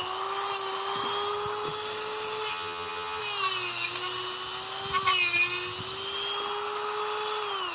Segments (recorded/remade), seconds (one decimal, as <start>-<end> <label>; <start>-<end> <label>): 0.0-2.5 recorded; 2.5-3.2 remade; 3.2-7.7 recorded